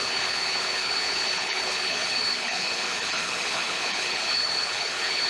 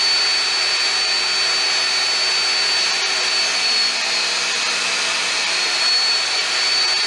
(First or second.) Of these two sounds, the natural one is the second